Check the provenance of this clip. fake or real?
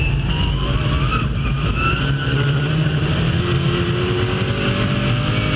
real